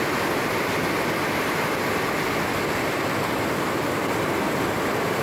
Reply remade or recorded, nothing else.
recorded